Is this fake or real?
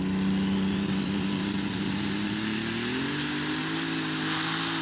real